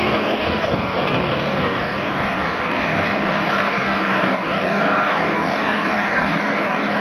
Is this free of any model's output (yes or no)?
no